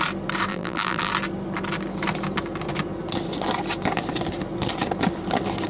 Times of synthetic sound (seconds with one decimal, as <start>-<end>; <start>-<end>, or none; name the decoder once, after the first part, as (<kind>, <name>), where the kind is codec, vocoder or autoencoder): 0.5-1.1 (vocoder, BigVGAN v2)